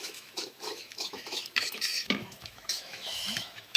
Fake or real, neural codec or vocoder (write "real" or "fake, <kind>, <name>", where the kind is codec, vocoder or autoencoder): fake, autoencoder, DAC-VAE